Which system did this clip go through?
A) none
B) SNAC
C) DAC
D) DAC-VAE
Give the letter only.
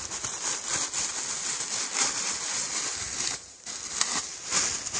A